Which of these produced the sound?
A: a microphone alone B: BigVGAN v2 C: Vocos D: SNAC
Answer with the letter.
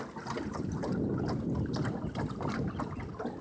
A